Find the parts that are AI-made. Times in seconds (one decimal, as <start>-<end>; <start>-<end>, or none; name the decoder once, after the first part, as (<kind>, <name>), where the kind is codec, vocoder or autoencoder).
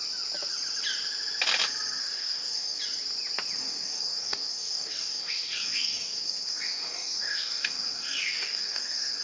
2.0-2.8 (codec, DAC); 3.6-9.2